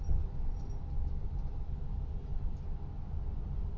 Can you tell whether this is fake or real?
real